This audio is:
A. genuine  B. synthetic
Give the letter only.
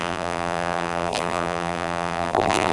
B